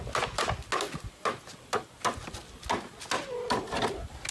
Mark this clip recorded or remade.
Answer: recorded